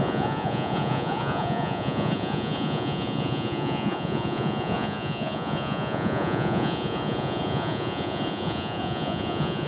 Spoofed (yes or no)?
yes